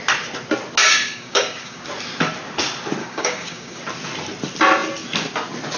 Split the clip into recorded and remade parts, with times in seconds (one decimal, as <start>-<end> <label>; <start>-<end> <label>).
0.0-0.8 recorded; 0.8-1.8 remade; 1.8-3.0 recorded; 3.0-3.8 remade; 3.8-5.8 recorded